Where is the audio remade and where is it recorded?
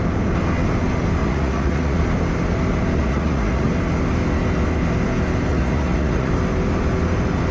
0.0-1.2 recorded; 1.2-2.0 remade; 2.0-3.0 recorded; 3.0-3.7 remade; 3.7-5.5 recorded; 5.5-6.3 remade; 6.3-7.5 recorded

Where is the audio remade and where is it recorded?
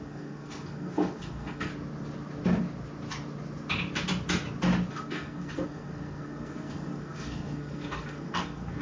0.0-1.7 remade; 1.7-4.9 recorded; 4.9-8.8 remade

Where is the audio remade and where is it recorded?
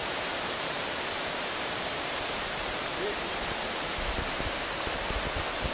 0.0-3.4 remade; 3.4-5.7 recorded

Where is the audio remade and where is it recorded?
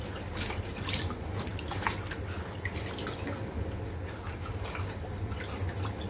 0.0-6.1 recorded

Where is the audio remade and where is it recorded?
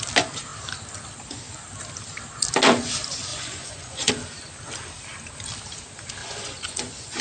0.0-3.3 recorded; 3.3-4.1 remade; 4.1-6.2 recorded; 6.2-7.2 remade